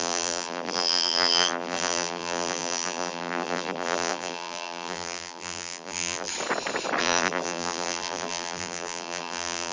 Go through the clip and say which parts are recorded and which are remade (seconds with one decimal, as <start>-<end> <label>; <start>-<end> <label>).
0.0-6.3 remade; 6.3-7.0 recorded; 7.0-9.7 remade

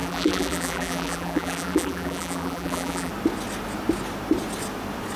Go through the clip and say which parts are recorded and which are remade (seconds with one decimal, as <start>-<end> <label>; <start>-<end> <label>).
0.0-3.1 remade; 3.1-5.2 recorded

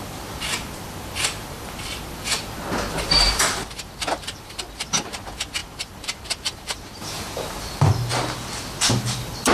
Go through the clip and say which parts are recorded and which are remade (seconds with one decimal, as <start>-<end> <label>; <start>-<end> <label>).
0.0-8.1 remade; 8.1-8.9 recorded; 8.9-9.5 remade

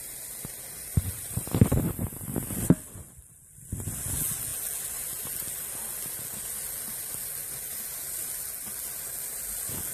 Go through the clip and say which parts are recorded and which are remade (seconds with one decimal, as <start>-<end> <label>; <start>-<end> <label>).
0.0-9.9 recorded

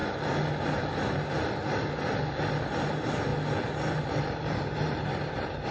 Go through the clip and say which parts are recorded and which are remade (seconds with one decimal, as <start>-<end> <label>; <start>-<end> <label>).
0.0-2.9 recorded; 2.9-3.3 remade; 3.3-4.0 recorded; 4.0-5.7 remade

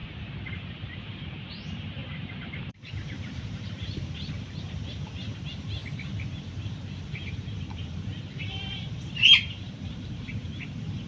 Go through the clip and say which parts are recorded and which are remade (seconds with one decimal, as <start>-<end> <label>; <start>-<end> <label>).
0.0-0.5 recorded; 0.5-5.8 remade; 5.8-7.1 recorded; 7.1-11.1 remade